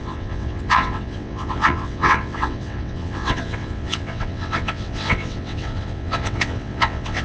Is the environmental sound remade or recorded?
remade